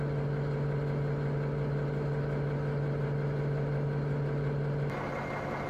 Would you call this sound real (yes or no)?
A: yes